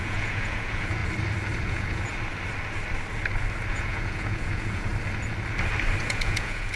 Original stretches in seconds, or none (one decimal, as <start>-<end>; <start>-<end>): 1.0-1.6; 2.1-3.7; 4.9-6.0